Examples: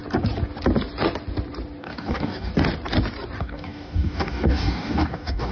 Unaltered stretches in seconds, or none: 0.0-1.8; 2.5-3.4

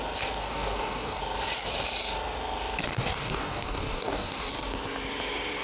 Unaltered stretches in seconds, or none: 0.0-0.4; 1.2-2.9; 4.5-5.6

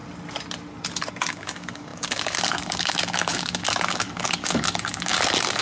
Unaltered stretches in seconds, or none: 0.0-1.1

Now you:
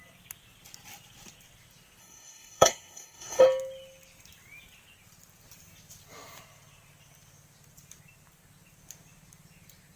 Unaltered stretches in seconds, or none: 0.0-2.0; 3.4-10.0